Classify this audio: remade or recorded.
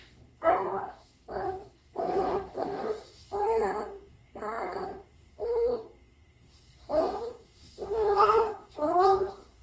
remade